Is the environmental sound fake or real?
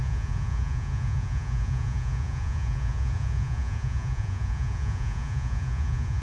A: fake